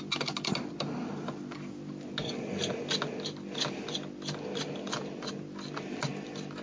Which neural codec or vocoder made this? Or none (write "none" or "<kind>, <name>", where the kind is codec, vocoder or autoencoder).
none